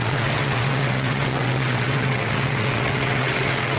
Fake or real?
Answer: fake